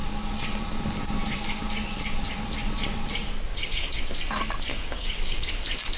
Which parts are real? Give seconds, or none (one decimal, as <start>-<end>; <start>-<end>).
0.0-3.5; 4.0-4.7; 5.5-6.0